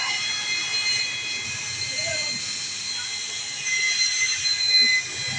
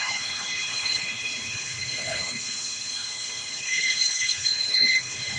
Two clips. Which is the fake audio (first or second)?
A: second